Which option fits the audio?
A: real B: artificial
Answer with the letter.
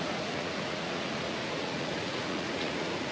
B